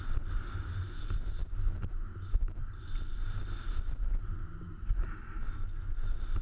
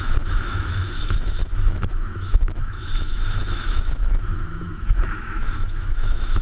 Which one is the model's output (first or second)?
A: second